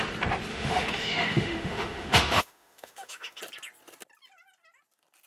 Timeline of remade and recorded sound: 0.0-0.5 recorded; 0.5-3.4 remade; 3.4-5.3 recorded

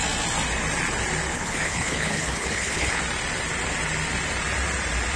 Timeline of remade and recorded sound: 0.0-1.3 recorded; 1.3-3.0 remade; 3.0-5.2 recorded